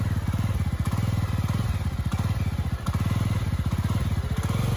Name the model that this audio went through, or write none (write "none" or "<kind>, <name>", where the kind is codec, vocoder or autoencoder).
none